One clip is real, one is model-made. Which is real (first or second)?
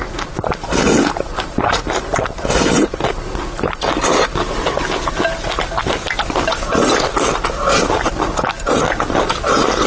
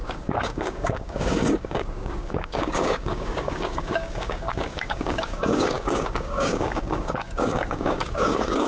first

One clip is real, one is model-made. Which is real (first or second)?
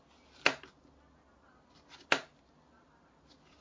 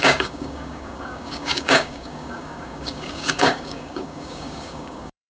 first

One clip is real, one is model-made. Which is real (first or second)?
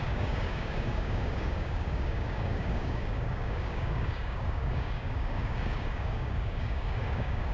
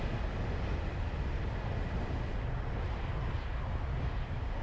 second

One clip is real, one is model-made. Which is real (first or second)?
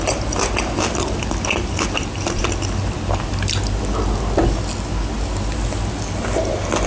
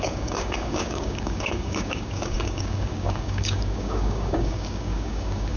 first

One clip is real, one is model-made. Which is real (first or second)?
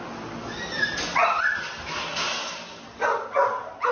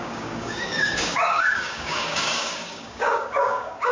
first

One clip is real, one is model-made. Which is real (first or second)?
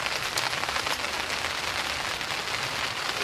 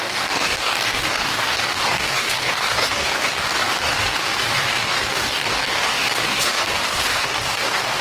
first